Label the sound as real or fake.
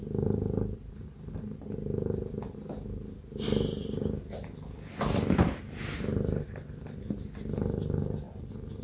real